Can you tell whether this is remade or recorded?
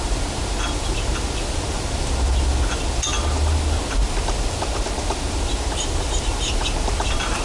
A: recorded